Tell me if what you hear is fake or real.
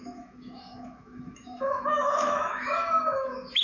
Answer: fake